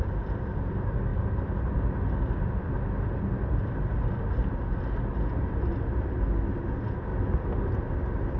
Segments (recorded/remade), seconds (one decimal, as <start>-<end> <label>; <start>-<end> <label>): 0.0-8.4 recorded